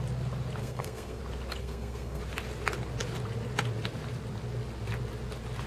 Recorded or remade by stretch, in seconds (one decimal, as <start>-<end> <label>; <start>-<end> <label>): 0.0-0.6 recorded; 0.6-1.2 remade; 1.2-1.6 recorded; 1.6-2.2 remade; 2.2-5.7 recorded